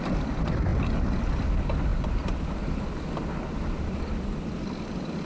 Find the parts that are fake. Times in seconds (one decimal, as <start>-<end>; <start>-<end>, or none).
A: 1.9-5.3